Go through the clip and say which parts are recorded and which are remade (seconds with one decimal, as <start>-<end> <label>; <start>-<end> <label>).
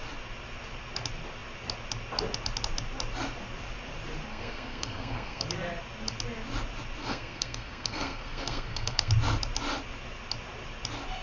0.0-4.3 recorded; 4.3-5.4 remade; 5.4-7.0 recorded; 7.0-9.1 remade; 9.1-11.2 recorded